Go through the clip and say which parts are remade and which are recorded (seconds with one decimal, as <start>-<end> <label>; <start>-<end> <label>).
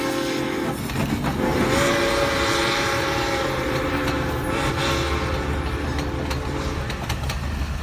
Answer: 0.0-1.5 recorded; 1.5-4.7 remade; 4.7-7.8 recorded